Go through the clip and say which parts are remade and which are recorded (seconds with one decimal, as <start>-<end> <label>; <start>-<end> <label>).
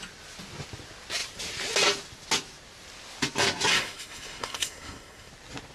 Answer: 0.0-3.7 recorded; 3.7-5.3 remade; 5.3-5.7 recorded